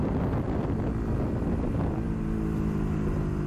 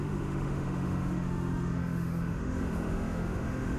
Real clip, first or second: first